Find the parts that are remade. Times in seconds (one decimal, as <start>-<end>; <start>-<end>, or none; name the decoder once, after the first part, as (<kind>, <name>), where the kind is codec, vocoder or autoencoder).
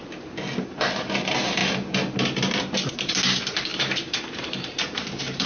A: 0.6-1.6 (vocoder, BigVGAN v2); 2.9-3.7; 4.2-5.5